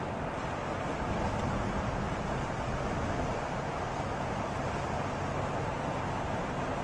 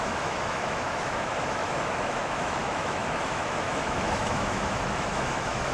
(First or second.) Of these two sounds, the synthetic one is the second